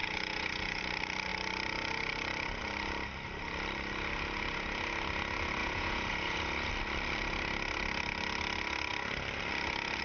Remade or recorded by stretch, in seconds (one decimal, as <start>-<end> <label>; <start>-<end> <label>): 0.0-0.8 remade; 0.8-5.6 recorded; 5.6-6.7 remade; 6.7-10.0 recorded